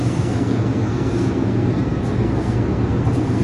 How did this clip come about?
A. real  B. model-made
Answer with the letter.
B